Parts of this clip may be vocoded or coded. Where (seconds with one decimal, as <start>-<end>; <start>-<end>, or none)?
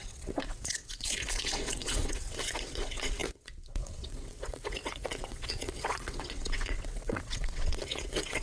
0.0-8.4